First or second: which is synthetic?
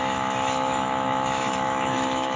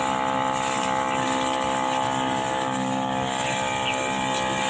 first